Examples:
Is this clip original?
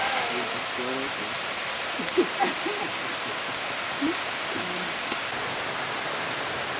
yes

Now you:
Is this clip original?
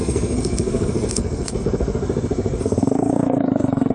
no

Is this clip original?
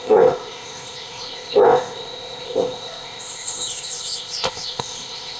no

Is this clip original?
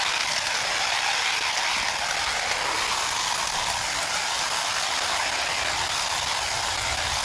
yes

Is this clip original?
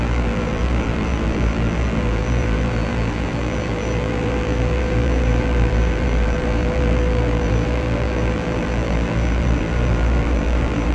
no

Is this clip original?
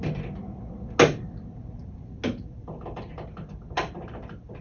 yes